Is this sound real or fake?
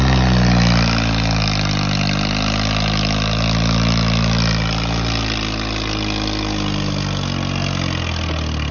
real